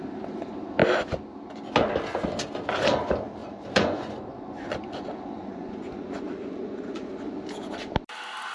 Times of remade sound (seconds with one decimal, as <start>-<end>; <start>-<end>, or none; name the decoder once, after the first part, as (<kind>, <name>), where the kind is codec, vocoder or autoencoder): 3.4-7.1 (vocoder, Vocos)